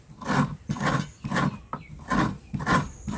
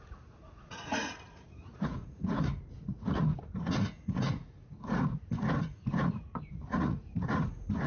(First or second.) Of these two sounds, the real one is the first